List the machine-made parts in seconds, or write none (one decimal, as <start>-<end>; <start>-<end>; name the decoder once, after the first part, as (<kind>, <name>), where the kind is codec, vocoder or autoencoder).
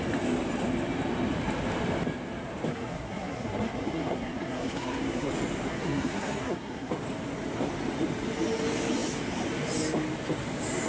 2.7-5.3 (codec, SNAC); 5.7-6.9